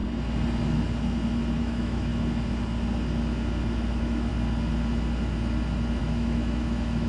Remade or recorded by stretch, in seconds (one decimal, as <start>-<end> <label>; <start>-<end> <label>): 0.0-1.6 recorded; 1.6-2.1 remade; 2.1-3.9 recorded; 3.9-4.3 remade; 4.3-6.0 recorded; 6.0-7.1 remade